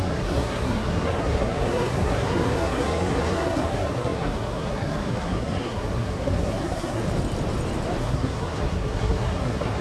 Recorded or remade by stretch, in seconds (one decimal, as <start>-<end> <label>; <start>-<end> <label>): 0.0-7.0 remade; 7.0-8.0 recorded; 8.0-9.8 remade